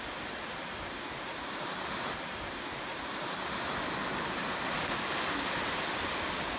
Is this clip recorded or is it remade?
recorded